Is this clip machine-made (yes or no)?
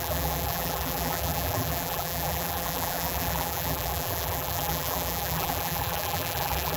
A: yes